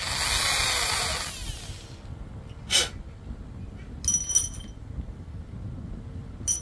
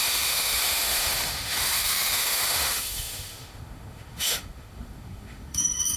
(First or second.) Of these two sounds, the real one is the first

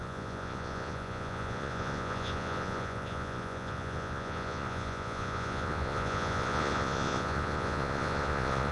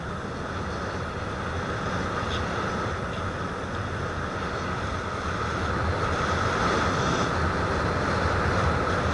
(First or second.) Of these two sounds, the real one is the second